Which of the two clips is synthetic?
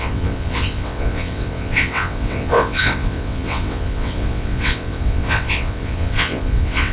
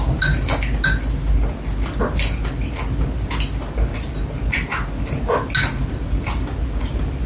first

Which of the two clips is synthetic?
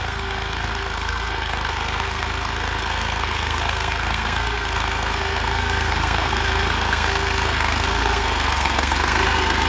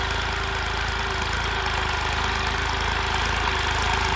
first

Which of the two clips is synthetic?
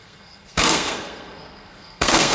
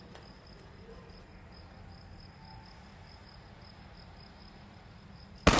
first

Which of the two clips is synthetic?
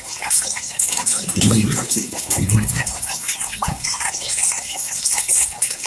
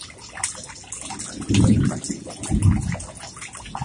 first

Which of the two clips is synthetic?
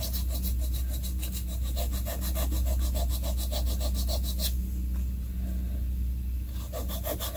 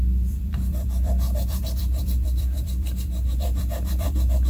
second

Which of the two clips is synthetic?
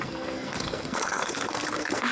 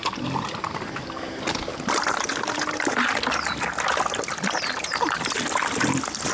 first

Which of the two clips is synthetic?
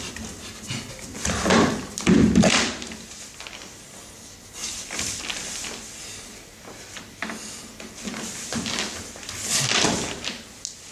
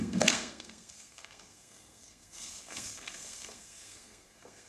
second